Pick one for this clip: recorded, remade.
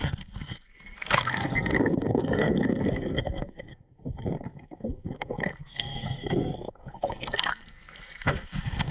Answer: remade